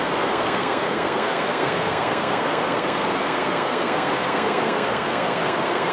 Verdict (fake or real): fake